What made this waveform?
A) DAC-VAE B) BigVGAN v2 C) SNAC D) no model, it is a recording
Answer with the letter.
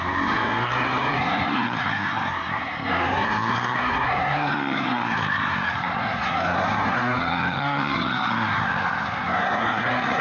C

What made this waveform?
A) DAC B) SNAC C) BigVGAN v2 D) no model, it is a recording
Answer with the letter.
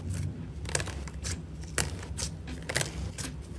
D